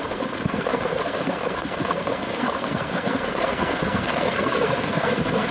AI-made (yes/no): yes